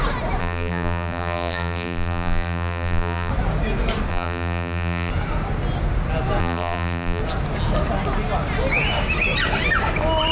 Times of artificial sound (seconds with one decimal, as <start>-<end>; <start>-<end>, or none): 0.4-3.3; 4.1-5.1; 6.4-7.2